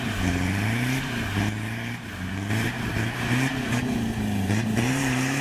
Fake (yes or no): yes